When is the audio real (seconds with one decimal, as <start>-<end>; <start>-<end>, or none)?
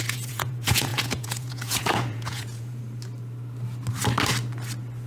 2.8-5.1